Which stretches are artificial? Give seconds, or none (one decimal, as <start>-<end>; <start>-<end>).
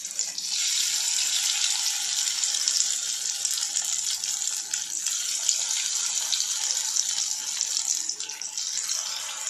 none